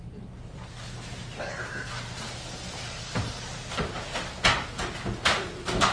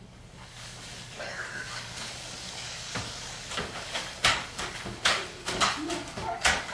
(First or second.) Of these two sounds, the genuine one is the first